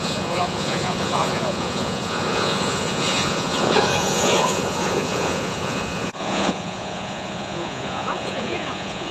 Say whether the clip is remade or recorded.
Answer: remade